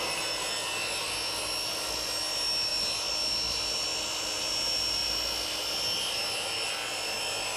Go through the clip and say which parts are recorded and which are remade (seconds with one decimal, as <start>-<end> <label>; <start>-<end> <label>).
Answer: 0.0-7.6 recorded